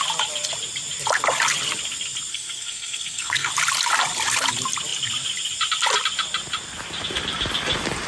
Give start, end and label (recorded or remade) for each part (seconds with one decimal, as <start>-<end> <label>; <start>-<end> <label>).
0.0-2.3 recorded; 2.3-3.5 remade; 3.5-8.1 recorded